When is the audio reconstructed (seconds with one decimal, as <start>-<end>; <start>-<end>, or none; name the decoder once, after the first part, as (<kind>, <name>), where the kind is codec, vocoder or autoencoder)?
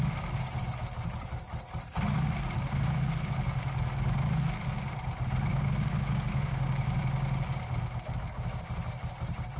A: 5.5-7.0 (codec, DAC)